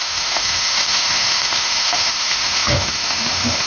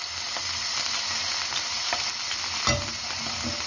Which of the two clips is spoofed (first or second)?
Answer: first